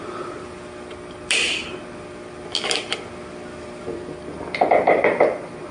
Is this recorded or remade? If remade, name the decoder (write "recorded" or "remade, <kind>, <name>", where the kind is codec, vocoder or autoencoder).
recorded